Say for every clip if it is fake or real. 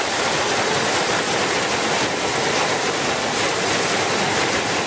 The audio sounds real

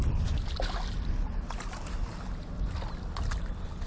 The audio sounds real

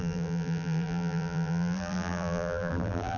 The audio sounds fake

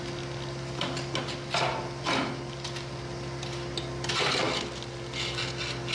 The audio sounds real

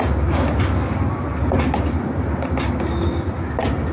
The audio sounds real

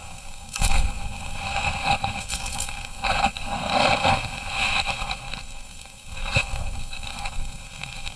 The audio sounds fake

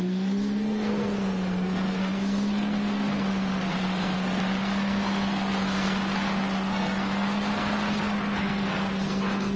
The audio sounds fake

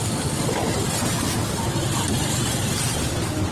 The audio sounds real